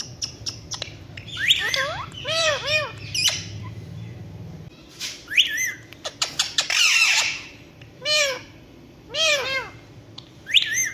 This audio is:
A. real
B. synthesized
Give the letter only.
B